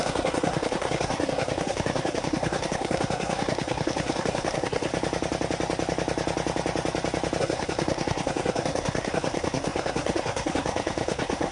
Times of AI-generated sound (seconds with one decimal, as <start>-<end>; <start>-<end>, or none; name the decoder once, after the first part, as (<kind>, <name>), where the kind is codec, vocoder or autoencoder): 0.0-4.9 (codec, SNAC); 7.4-11.5